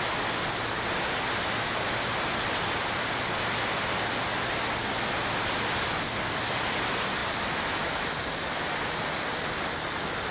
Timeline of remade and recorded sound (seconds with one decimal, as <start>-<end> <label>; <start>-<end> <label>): 0.0-10.3 recorded